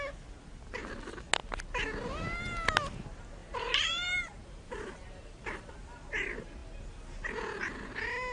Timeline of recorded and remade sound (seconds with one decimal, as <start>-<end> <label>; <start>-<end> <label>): 0.0-3.4 recorded; 3.4-5.7 remade; 5.7-8.3 recorded